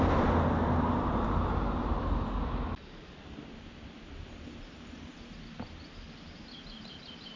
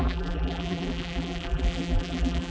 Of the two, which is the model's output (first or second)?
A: second